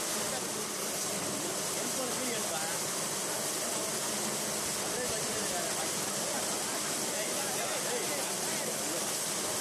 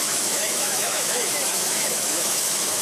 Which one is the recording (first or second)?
first